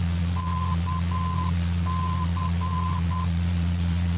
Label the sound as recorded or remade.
remade